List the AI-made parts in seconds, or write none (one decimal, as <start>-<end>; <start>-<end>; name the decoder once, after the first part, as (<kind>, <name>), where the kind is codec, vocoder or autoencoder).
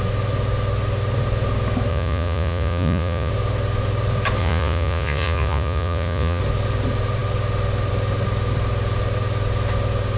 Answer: 1.9-3.3 (vocoder, Vocos); 4.4-6.4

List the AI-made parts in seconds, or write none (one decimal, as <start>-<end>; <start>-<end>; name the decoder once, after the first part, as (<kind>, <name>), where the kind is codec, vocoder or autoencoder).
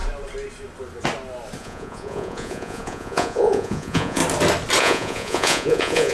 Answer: 1.6-4.2 (vocoder, Vocos); 4.8-6.1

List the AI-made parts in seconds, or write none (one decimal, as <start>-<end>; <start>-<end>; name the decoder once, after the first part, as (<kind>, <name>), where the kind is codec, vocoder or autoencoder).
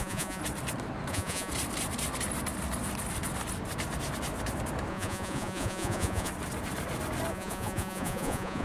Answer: 0.0-0.4 (vocoder, Vocos); 1.1-1.5; 4.9-6.3; 7.3-8.6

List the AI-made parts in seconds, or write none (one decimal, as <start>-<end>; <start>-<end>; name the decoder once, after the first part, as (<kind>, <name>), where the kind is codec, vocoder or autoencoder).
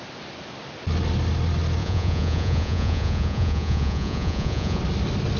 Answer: 1.8-4.8 (vocoder, Vocos)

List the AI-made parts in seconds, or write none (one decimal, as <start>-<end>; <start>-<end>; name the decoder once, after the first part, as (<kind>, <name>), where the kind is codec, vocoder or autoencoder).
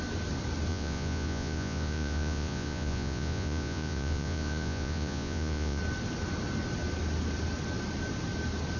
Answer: 0.7-5.8 (vocoder, Vocos)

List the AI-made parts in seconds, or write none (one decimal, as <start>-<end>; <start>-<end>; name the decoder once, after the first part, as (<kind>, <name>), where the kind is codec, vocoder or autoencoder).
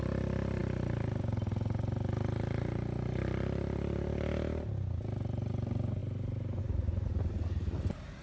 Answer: none